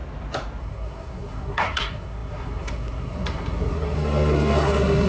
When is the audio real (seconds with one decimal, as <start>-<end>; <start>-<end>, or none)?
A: 0.0-0.6